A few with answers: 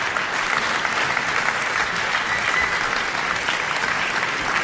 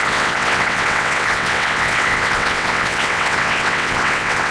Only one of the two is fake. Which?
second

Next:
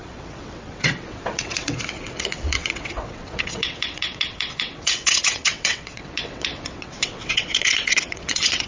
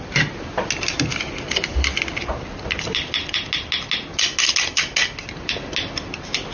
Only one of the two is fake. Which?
first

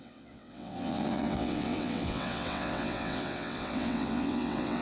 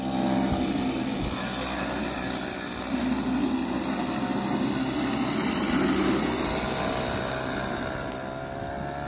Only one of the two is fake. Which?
first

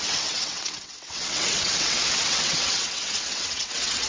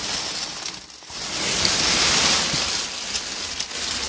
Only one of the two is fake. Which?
first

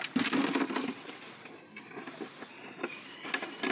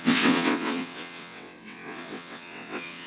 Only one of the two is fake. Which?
second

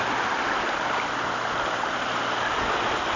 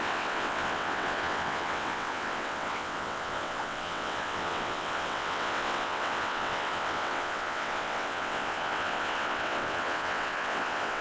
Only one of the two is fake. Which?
second